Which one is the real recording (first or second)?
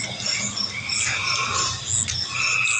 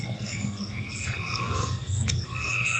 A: first